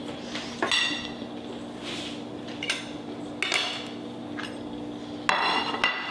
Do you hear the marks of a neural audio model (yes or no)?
no